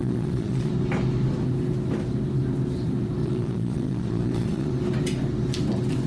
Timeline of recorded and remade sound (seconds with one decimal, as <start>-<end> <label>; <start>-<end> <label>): 0.0-0.7 remade; 0.7-3.2 recorded; 3.2-4.7 remade; 4.7-6.1 recorded